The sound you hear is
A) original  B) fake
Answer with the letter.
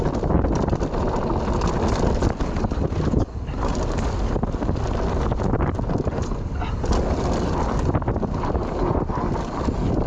A